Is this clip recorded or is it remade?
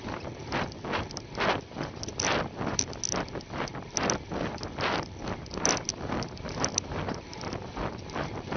recorded